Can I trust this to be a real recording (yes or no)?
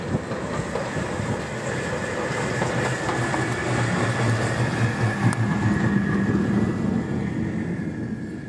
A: yes